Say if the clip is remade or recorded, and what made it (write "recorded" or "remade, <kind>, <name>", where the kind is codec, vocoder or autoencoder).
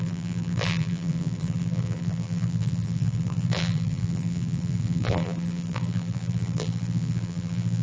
remade, vocoder, BigVGAN v2